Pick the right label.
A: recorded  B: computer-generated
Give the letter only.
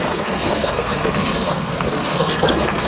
B